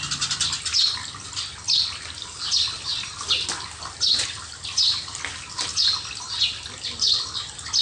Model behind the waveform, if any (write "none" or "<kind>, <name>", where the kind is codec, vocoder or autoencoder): none